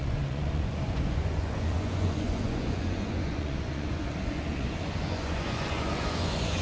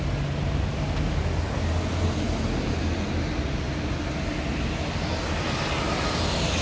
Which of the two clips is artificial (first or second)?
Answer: first